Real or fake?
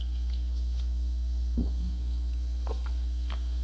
fake